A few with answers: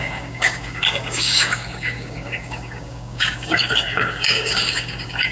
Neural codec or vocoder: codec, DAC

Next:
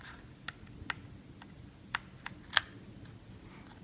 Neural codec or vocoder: none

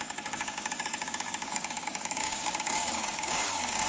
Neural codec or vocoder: codec, DAC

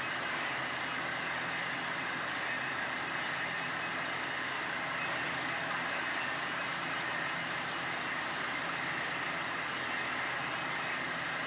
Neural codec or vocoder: none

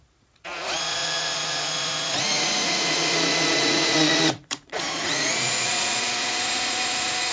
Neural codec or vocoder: vocoder, Vocos